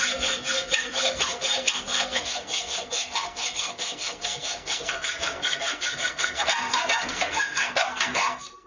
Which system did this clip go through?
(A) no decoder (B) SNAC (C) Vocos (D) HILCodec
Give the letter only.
B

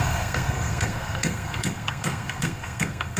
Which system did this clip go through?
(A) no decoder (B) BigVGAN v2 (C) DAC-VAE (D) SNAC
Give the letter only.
D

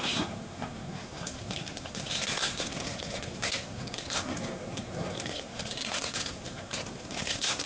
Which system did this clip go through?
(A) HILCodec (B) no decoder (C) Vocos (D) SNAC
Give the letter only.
D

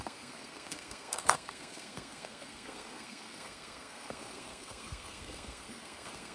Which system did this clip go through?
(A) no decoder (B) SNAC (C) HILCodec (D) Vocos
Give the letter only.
B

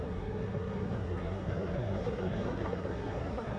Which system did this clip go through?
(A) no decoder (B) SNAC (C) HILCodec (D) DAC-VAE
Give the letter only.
B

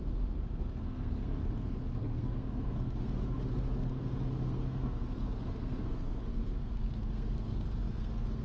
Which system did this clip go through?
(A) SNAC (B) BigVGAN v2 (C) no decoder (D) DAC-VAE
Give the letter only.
A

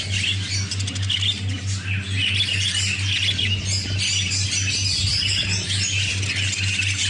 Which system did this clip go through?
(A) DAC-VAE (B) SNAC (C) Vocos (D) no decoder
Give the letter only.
D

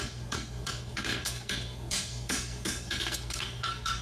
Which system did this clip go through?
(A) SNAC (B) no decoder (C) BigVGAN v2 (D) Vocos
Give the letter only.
A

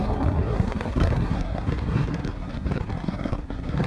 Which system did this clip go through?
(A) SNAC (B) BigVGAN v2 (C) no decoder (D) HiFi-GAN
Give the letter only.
A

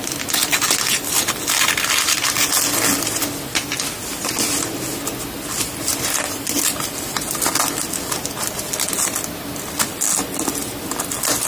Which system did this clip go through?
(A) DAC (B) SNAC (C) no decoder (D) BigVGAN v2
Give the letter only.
C